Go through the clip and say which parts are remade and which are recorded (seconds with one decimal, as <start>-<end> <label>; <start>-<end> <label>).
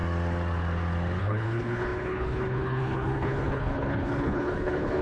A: 0.0-1.2 recorded; 1.2-5.0 remade